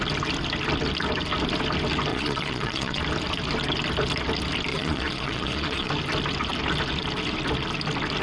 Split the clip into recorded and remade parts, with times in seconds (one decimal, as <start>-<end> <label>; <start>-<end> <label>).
0.0-2.1 recorded; 2.1-3.0 remade; 3.0-4.7 recorded; 4.7-5.9 remade; 5.9-8.2 recorded